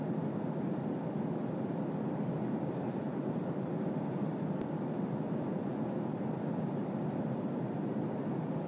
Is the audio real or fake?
real